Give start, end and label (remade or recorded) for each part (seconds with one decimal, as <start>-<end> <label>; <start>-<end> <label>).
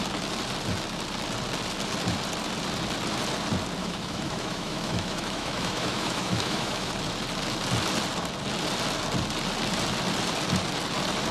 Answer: 0.0-3.8 recorded; 3.8-6.9 remade; 6.9-11.3 recorded